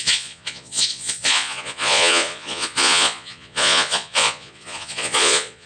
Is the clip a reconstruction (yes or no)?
yes